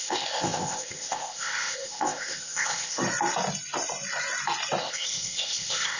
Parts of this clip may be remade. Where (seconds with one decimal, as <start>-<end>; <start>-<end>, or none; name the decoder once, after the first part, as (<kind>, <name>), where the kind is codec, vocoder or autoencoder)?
0.0-3.0 (codec, ZipCodec); 4.8-6.0